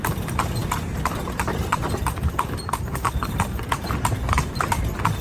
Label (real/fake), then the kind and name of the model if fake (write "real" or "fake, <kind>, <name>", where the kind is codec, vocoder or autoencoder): fake, vocoder, BigVGAN v2